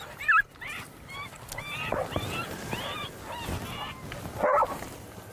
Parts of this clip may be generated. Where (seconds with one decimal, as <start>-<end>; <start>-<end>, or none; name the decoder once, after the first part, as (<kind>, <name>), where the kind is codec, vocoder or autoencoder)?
4.6-5.3 (vocoder, BigVGAN v2)